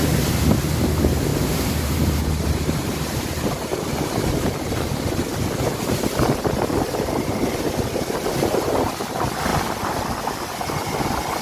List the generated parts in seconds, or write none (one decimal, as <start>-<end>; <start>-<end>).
1.3-4.5